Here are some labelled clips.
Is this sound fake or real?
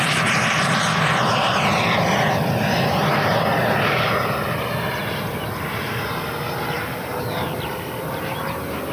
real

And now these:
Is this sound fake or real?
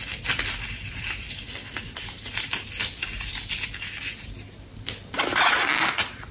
real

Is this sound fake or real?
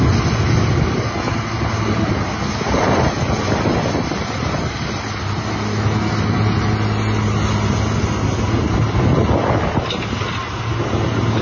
real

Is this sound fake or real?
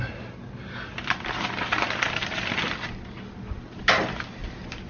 real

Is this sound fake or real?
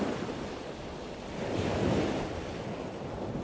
real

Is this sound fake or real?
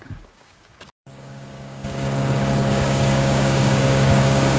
fake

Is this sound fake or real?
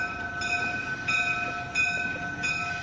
real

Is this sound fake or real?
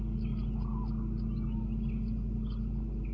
real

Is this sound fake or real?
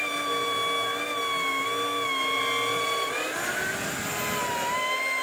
real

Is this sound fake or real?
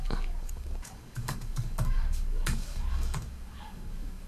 fake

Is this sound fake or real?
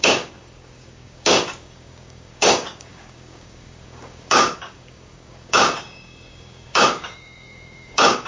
fake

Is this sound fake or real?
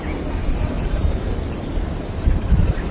real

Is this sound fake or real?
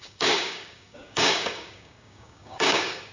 fake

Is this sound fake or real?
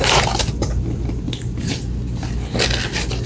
real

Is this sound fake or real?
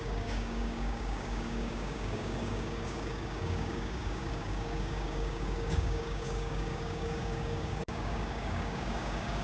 fake